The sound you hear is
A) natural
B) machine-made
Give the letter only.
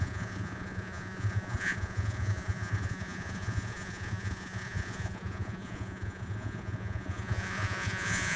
B